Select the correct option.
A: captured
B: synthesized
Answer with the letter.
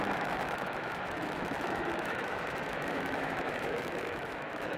B